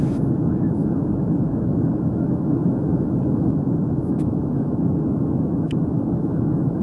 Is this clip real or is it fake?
fake